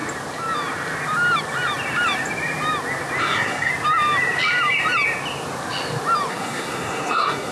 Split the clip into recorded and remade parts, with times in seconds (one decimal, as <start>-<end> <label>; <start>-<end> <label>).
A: 0.0-3.2 recorded; 3.2-3.7 remade; 3.7-6.3 recorded; 6.3-7.5 remade